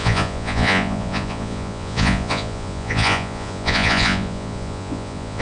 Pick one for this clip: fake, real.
fake